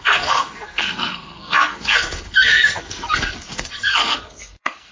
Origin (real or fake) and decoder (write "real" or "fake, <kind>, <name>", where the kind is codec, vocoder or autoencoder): fake, codec, SNAC